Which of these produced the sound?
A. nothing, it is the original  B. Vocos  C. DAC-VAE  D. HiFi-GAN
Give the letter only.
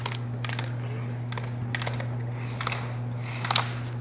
A